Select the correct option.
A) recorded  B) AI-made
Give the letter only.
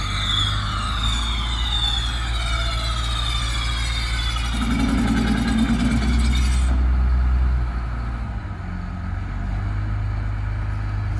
A